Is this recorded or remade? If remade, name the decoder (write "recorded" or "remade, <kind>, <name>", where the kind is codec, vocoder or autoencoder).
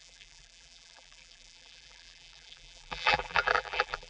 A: remade, vocoder, BigVGAN v2